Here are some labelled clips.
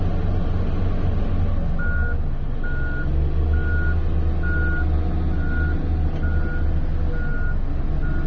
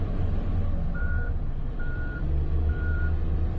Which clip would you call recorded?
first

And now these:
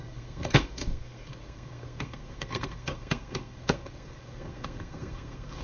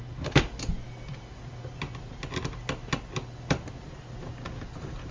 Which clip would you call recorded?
second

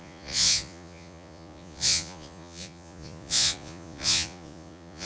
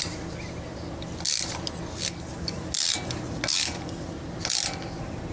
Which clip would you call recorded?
second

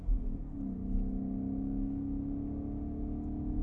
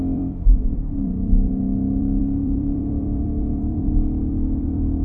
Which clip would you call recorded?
first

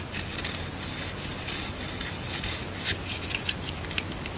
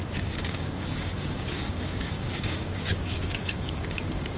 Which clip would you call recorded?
first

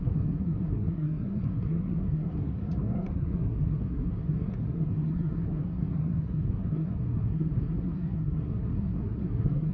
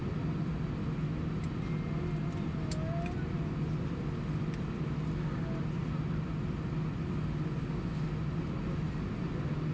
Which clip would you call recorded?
second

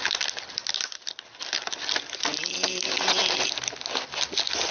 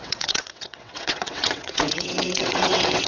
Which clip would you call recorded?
first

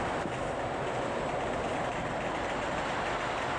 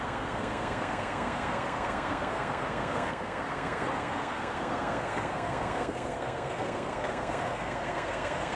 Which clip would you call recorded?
first